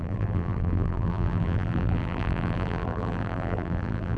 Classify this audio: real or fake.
fake